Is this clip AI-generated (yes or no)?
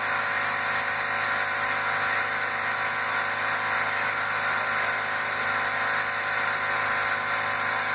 no